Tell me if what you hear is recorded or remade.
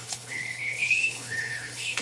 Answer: remade